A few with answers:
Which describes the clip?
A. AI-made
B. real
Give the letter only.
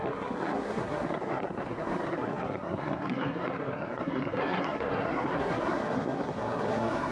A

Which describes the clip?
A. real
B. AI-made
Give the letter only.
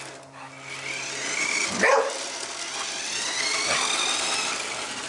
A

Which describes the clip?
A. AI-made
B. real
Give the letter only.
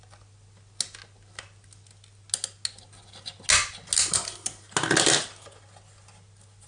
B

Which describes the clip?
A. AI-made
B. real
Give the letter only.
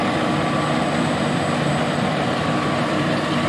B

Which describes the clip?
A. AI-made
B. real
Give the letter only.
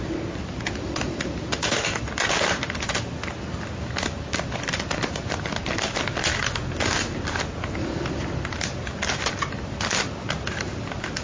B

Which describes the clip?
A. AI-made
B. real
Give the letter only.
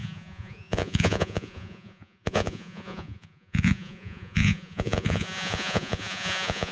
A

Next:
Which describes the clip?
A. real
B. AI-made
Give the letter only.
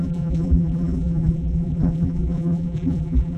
B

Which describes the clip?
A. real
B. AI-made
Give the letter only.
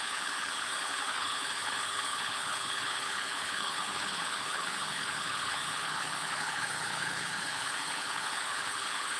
B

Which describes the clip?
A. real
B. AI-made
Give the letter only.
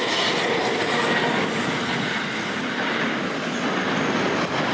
A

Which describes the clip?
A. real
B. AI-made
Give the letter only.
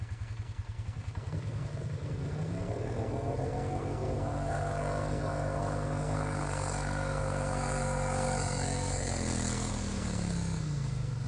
B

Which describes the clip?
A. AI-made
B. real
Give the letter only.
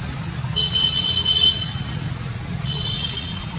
A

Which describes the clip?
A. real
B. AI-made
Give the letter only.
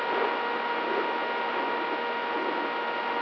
A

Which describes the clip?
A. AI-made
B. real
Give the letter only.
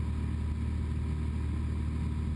B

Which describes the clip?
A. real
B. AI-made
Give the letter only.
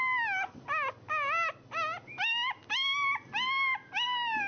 A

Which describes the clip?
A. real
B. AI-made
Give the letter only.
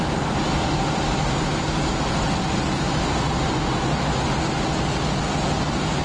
A